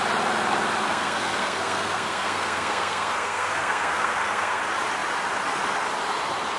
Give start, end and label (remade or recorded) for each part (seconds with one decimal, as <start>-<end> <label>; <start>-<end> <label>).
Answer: 0.0-0.8 recorded; 0.8-4.6 remade; 4.6-6.6 recorded